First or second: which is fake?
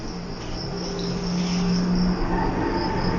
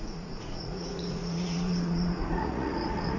second